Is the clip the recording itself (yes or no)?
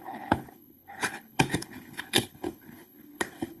no